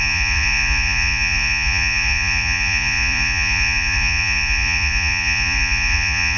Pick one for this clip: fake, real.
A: fake